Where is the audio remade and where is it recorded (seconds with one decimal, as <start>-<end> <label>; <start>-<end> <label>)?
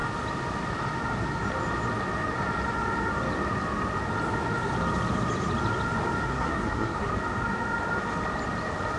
0.0-6.3 recorded; 6.3-7.1 remade; 7.1-9.0 recorded